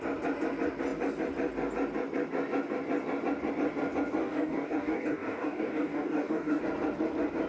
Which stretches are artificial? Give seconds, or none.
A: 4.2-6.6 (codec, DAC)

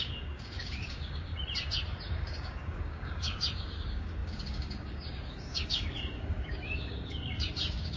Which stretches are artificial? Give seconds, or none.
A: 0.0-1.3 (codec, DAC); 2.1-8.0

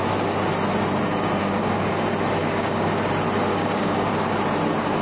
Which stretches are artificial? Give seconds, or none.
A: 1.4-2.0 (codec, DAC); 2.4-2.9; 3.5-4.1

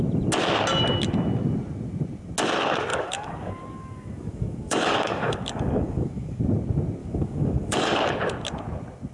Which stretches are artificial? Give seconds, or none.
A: 2.9-6.4 (codec, DAC); 7.0-8.1

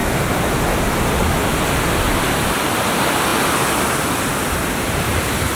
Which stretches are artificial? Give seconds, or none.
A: none

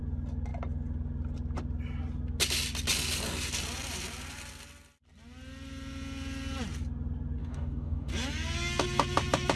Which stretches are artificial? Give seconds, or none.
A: 7.4-8.1 (codec, DAC)